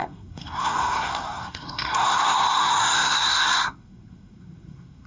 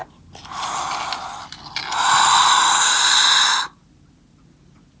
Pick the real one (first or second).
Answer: second